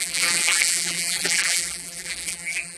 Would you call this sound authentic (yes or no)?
no